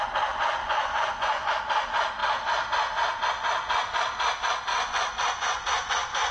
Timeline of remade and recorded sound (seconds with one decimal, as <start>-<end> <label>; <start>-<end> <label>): 0.0-0.6 recorded; 0.6-1.5 remade; 1.5-4.7 recorded; 4.7-6.3 remade